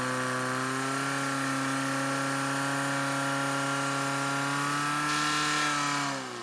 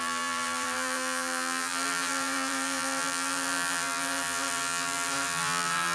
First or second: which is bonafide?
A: first